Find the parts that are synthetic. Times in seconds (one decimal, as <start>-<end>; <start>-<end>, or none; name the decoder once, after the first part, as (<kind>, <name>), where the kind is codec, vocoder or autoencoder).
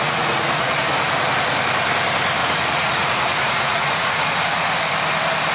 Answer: 0.0-0.8 (vocoder, Vocos); 2.4-4.7